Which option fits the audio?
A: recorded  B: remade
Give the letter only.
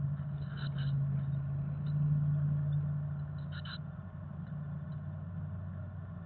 A